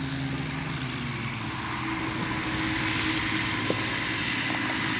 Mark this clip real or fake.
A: real